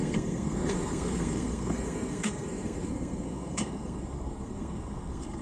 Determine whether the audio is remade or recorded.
remade